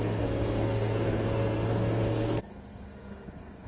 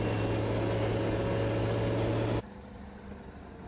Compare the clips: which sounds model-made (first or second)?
first